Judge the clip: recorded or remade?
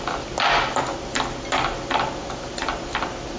recorded